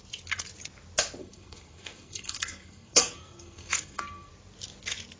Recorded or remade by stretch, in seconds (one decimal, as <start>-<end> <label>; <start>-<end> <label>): 0.0-1.2 recorded; 1.2-4.3 remade; 4.3-5.2 recorded